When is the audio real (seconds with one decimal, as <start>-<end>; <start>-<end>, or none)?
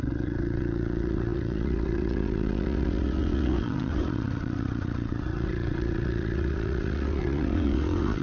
none